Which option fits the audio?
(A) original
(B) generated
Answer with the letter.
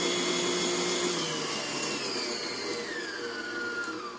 A